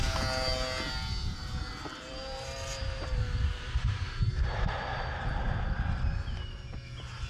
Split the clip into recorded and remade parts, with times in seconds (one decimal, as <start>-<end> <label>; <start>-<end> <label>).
0.0-1.2 recorded; 1.2-4.8 remade; 4.8-7.3 recorded